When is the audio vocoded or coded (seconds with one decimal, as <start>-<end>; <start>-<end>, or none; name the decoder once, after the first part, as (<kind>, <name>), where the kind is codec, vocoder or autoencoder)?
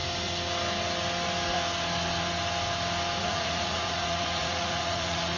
3.2-5.4 (vocoder, Vocos)